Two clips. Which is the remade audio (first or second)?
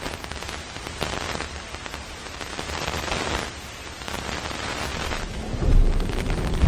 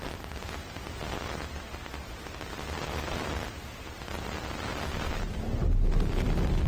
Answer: first